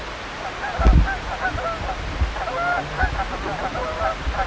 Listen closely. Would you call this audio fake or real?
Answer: real